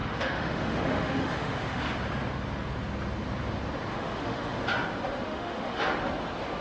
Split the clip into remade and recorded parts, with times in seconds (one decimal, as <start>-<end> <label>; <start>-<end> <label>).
0.0-1.8 remade; 1.8-3.9 recorded; 3.9-4.5 remade; 4.5-5.1 recorded; 5.1-5.8 remade; 5.8-6.6 recorded